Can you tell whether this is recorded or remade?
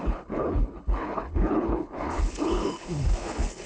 remade